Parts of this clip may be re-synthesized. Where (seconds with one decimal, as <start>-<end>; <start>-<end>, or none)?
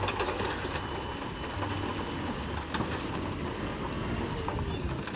none